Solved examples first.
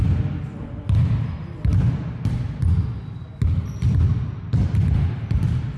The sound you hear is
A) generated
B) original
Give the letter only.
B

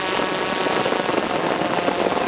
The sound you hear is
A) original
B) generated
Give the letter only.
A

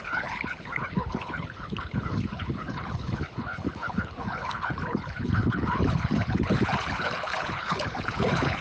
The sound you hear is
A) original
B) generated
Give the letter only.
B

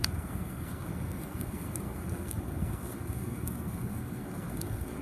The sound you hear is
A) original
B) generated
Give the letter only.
B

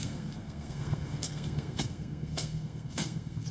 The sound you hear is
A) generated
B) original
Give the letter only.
A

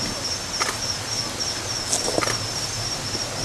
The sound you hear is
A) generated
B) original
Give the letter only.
B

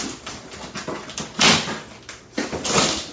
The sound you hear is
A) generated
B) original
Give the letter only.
B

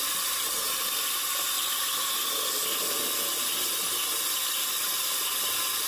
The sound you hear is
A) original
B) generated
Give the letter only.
A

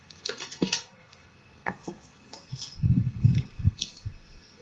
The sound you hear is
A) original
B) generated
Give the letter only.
B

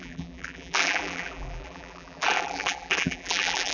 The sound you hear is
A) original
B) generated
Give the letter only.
B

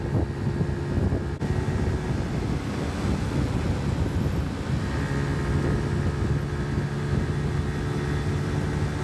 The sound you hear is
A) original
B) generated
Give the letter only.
A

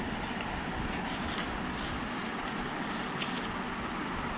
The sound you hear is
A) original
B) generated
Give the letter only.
A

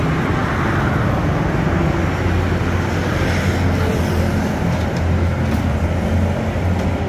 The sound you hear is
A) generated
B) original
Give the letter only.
B